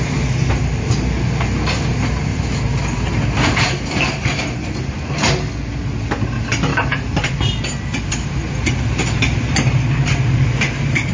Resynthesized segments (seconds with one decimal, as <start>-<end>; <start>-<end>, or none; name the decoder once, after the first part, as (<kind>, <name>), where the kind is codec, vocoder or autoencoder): 2.3-5.1 (vocoder, BigVGAN v2); 6.7-7.5